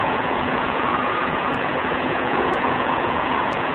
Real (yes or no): no